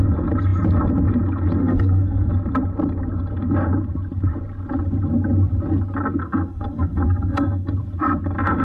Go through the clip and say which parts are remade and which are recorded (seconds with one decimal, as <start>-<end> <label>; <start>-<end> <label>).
0.0-1.6 recorded; 1.6-2.3 remade; 2.3-6.2 recorded; 6.2-7.7 remade; 7.7-8.6 recorded